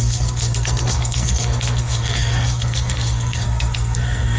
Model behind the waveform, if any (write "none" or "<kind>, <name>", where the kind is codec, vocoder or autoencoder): codec, SNAC